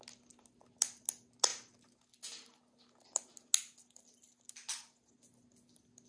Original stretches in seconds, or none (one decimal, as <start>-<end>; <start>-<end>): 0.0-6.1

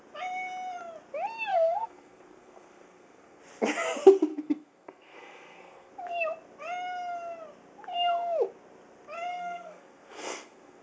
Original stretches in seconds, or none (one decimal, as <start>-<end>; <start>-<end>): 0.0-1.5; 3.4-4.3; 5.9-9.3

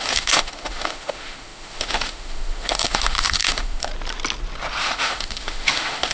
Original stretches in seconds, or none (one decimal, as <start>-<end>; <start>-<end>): 3.9-4.8